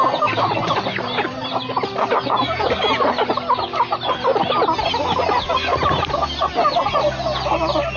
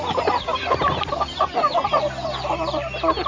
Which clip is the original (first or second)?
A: first